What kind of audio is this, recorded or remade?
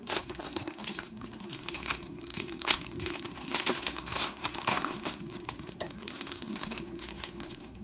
remade